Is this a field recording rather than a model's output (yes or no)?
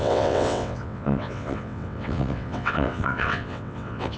no